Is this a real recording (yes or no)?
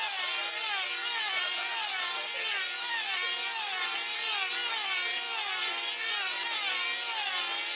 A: yes